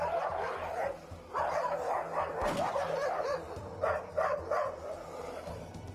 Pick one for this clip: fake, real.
real